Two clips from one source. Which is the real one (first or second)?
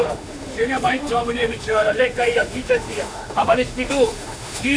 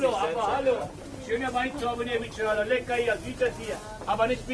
second